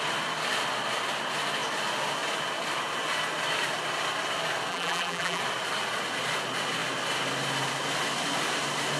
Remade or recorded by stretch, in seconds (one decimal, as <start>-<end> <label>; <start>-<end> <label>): 0.0-4.7 recorded; 4.7-5.4 remade; 5.4-9.0 recorded